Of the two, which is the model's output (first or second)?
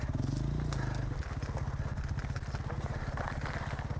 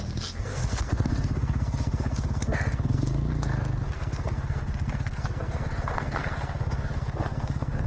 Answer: second